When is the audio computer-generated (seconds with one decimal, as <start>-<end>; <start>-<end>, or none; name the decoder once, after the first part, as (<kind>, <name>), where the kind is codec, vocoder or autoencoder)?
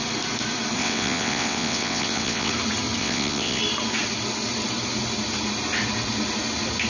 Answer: 0.8-2.5 (vocoder, WaveNeXt); 3.0-3.6